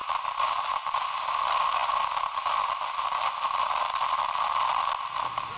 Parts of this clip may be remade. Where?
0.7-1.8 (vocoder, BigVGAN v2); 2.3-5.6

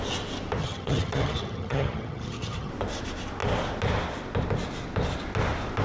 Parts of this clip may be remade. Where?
0.6-2.7 (vocoder, HiFi-GAN)

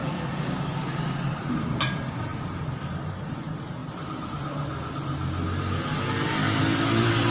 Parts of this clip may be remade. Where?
3.8-4.3 (vocoder, BigVGAN v2); 6.4-7.3

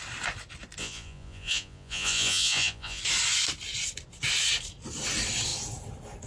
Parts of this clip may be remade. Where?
0.8-3.0 (vocoder, Vocos)